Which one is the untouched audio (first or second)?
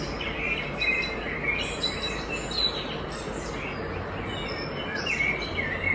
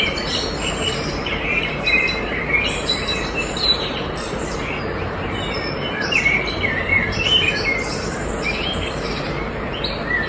first